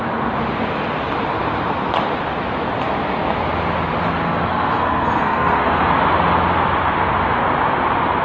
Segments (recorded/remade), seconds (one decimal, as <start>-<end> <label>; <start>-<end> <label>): 0.0-4.2 recorded; 4.2-5.8 remade; 5.8-8.2 recorded